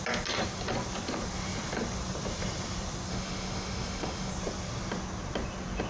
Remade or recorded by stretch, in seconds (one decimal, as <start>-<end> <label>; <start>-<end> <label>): 0.0-3.1 recorded; 3.1-4.3 remade; 4.3-5.9 recorded